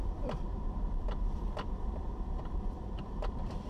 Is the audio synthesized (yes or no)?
yes